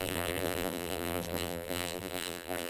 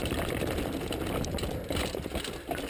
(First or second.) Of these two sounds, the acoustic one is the second